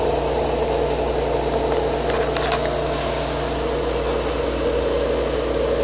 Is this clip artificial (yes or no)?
no